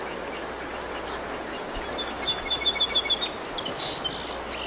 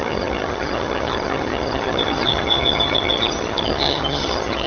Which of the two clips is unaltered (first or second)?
first